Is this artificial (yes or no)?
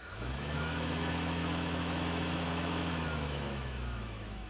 yes